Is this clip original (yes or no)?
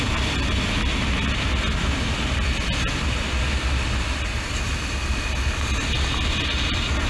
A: yes